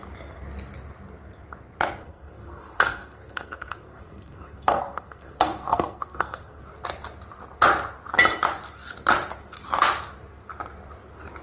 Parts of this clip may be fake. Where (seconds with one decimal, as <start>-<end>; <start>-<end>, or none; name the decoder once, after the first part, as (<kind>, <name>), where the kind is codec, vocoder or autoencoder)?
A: 2.0-6.6 (codec, SNAC)